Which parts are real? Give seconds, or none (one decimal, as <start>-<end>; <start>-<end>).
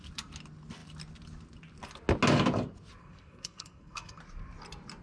0.0-3.0; 4.2-5.0